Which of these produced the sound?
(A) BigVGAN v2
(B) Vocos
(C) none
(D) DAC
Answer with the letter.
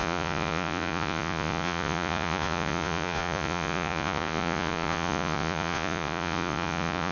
B